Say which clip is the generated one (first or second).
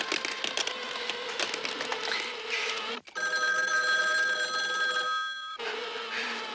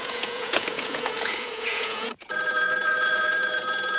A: second